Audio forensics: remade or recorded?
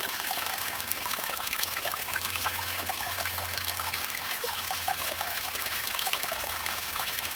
remade